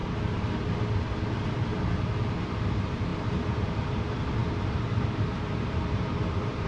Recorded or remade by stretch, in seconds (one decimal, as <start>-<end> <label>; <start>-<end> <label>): 0.0-0.6 remade; 0.6-3.1 recorded; 3.1-4.0 remade; 4.0-4.4 recorded; 4.4-6.7 remade